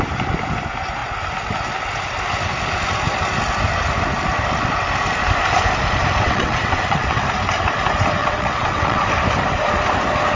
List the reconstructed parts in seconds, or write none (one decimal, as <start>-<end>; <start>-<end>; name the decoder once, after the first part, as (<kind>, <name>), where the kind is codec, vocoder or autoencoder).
6.2-7.2 (vocoder, WaveNeXt); 8.2-9.0

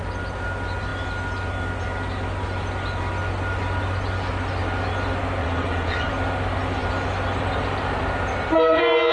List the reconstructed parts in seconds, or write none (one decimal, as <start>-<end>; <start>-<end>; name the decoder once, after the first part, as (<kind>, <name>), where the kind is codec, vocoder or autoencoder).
5.4-6.1 (vocoder, WaveNeXt)